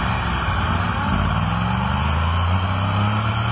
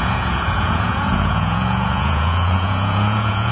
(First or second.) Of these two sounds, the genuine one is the first